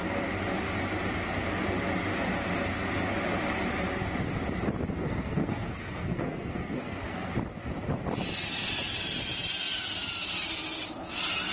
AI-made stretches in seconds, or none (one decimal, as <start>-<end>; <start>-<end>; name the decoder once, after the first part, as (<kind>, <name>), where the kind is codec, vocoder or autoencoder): 5.0-7.3 (codec, SNAC)